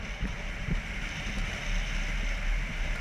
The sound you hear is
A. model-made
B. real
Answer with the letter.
B